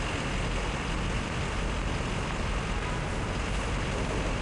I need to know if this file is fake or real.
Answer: real